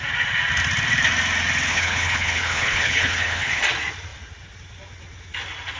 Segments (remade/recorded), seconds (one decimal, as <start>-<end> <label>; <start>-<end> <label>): 0.0-1.7 recorded; 1.7-3.6 remade; 3.6-5.8 recorded

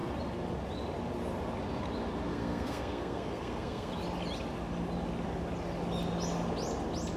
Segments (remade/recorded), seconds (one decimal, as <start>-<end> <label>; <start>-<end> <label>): 0.0-2.3 recorded; 2.3-3.9 remade; 3.9-7.2 recorded

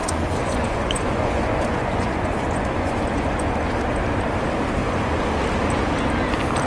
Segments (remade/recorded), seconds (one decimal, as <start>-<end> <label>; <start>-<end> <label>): 0.0-3.5 remade; 3.5-4.8 recorded; 4.8-5.4 remade; 5.4-6.7 recorded

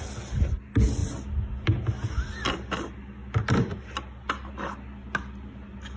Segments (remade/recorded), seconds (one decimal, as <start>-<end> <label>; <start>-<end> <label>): 0.0-6.0 recorded

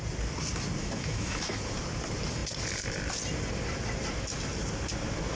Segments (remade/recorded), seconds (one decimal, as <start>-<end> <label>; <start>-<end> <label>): 0.0-0.8 recorded; 0.8-1.6 remade; 1.6-5.3 recorded